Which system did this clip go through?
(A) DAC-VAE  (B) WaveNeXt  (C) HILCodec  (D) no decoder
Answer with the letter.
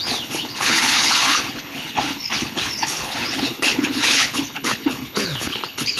C